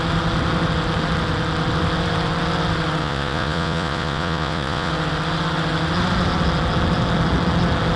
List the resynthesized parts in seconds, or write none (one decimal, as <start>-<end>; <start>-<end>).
3.0-4.9